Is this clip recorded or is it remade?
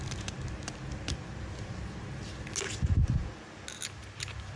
recorded